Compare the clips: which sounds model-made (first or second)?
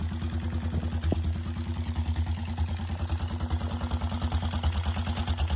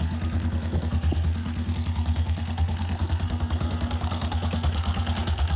second